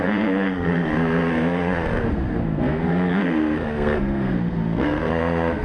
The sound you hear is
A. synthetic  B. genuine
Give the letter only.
A